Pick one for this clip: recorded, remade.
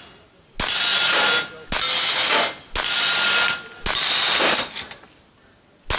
recorded